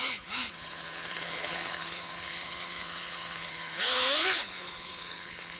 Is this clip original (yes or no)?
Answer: no